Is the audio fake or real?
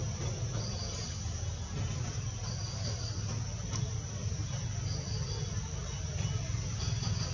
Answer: real